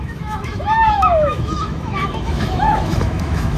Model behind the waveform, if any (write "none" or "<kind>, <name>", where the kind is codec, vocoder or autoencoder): autoencoder, DAC-VAE